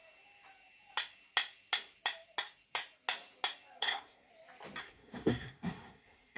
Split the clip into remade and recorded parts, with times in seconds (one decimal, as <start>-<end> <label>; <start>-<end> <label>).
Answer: 0.0-3.8 recorded; 3.8-4.3 remade; 4.3-4.8 recorded; 4.8-6.4 remade